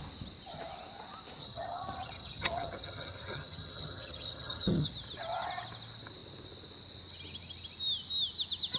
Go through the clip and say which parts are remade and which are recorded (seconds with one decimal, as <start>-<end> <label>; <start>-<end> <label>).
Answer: 0.0-1.4 recorded; 1.4-4.9 remade; 4.9-8.8 recorded